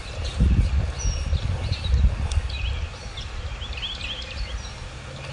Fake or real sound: real